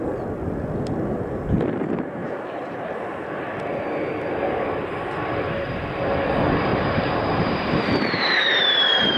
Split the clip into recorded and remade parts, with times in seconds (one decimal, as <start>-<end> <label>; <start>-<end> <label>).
0.0-2.2 recorded; 2.2-3.3 remade; 3.3-6.7 recorded; 6.7-9.2 remade